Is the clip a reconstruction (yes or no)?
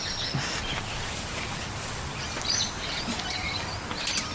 no